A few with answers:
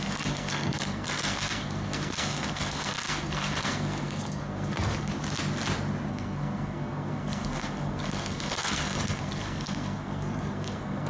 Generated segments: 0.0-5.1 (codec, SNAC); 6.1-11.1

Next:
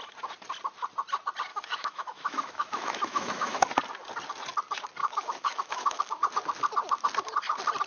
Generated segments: 1.5-3.6 (autoencoder, DAC-VAE); 5.0-6.2

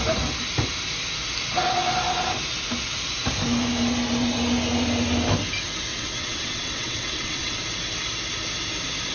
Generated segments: 5.9-7.6 (vocoder, WaveNeXt)

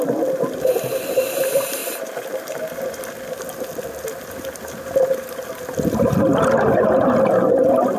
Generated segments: 1.8-3.0 (vocoder, BigVGAN v2)